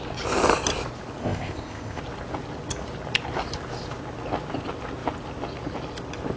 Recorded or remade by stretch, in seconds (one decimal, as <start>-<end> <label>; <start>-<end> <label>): 0.0-1.2 recorded; 1.2-2.0 remade; 2.0-6.4 recorded